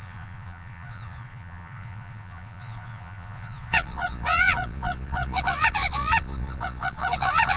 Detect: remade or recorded remade